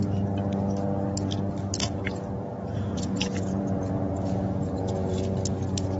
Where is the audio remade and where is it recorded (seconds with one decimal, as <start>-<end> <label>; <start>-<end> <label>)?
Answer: 0.0-1.8 recorded; 1.8-5.2 remade; 5.2-6.0 recorded